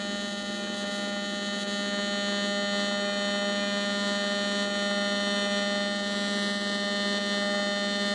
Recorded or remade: recorded